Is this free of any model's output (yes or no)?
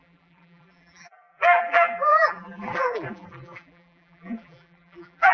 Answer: no